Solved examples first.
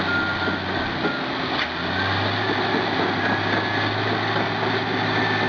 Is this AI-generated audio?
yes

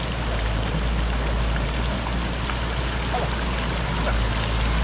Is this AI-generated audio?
no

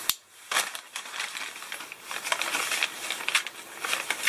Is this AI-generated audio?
no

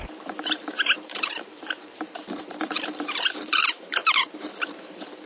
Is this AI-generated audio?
yes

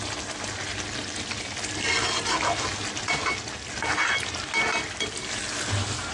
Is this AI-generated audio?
no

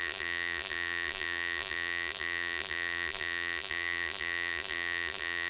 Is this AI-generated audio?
yes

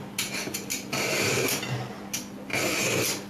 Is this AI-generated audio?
no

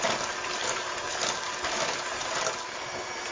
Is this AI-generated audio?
yes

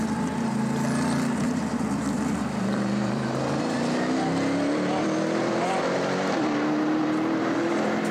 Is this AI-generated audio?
yes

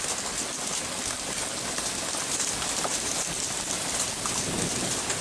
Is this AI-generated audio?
no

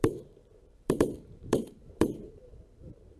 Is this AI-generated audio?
yes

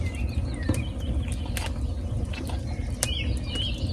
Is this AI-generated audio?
no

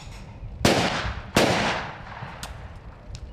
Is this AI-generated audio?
no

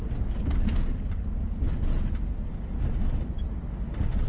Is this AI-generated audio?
no